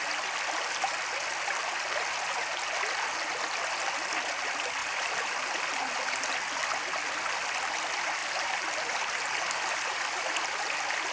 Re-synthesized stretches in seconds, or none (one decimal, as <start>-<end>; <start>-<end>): 4.8-5.7; 8.2-10.2